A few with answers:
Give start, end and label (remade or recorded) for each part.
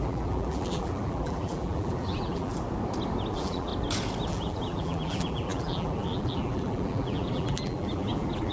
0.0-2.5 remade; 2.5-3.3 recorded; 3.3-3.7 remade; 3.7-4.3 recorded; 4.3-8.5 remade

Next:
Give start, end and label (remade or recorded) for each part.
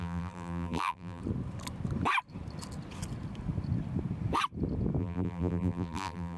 0.0-1.2 remade; 1.2-5.0 recorded; 5.0-6.4 remade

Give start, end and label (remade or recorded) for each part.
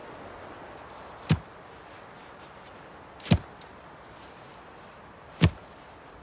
0.0-6.2 recorded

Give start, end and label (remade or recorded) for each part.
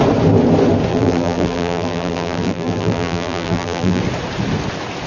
0.0-0.9 recorded; 0.9-4.0 remade; 4.0-5.1 recorded